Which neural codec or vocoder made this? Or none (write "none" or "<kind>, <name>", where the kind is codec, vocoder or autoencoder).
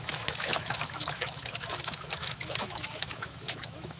autoencoder, DAC-VAE